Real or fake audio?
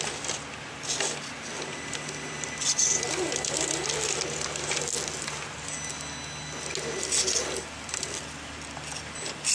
real